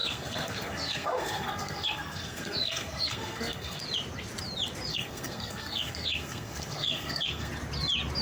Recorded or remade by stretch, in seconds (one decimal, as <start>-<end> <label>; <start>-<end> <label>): 0.0-3.8 remade; 3.8-4.9 recorded; 4.9-7.5 remade; 7.5-8.2 recorded